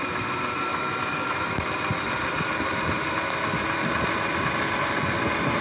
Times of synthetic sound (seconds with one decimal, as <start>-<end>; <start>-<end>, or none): 0.7-1.6